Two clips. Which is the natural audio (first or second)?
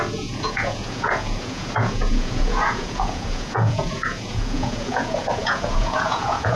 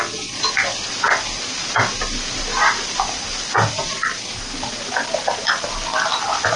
second